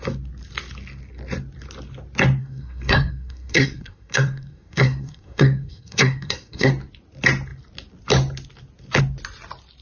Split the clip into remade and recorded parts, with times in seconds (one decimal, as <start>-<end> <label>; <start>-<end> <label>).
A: 0.0-2.4 recorded; 2.4-6.7 remade; 6.7-9.8 recorded